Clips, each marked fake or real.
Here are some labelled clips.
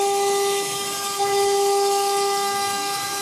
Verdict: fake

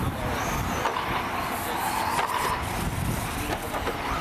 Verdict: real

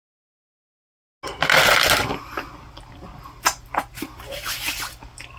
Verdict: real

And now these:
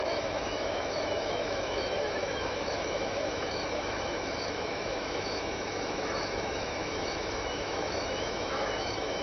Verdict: fake